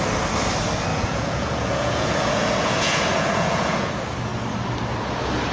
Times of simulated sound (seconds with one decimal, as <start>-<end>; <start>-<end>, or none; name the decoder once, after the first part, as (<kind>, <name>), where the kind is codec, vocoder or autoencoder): 0.9-3.9 (vocoder, Vocos)